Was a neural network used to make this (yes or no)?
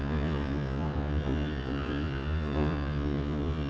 yes